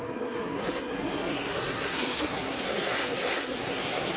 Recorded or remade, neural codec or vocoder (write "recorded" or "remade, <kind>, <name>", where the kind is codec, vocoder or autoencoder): remade, codec, SNAC